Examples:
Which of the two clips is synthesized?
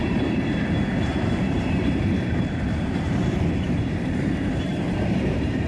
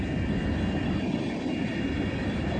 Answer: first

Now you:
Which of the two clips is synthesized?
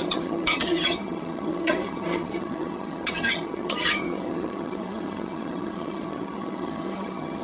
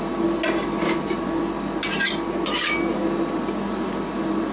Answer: first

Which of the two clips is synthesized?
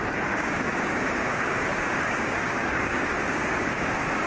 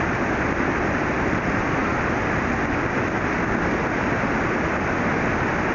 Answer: first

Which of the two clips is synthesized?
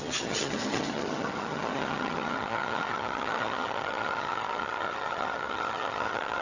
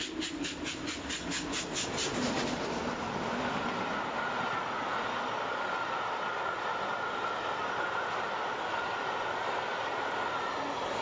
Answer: first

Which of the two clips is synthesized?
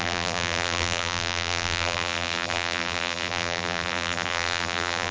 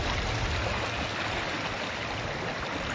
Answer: first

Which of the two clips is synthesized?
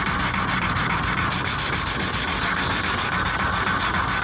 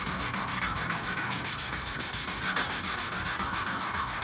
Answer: second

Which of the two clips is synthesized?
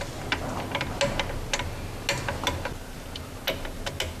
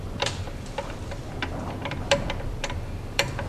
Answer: second